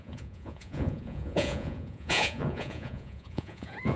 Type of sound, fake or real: fake